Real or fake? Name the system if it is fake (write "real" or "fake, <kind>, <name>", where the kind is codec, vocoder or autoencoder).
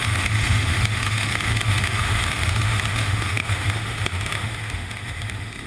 fake, autoencoder, DAC-VAE